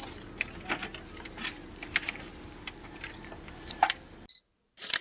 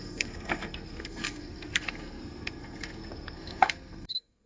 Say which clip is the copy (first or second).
second